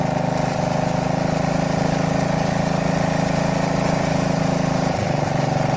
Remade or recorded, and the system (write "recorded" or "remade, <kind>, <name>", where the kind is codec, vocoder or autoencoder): recorded